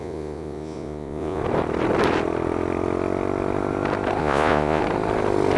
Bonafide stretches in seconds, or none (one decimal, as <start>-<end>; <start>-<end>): 1.4-4.2; 4.8-5.6